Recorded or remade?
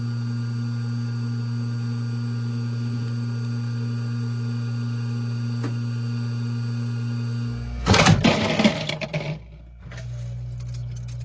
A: recorded